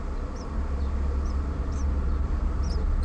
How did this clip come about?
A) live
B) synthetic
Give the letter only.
A